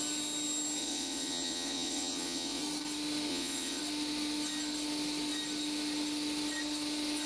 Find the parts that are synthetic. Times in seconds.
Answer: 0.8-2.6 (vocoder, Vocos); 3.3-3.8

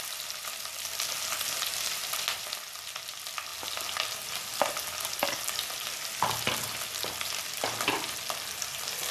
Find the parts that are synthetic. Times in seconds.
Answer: none

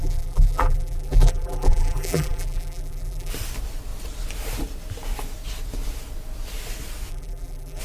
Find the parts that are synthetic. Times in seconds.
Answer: 0.0-3.3 (vocoder, BigVGAN v2); 7.1-7.8

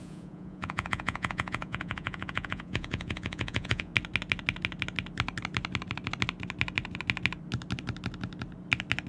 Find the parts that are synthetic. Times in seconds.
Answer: 0.0-3.9 (vocoder, Vocos)

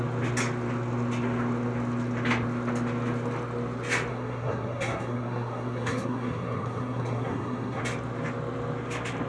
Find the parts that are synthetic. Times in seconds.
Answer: 4.1-7.8 (codec, SNAC)

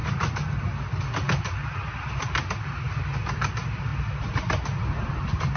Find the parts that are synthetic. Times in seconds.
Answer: none